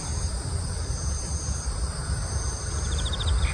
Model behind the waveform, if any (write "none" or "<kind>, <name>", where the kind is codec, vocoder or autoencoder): vocoder, BigVGAN v2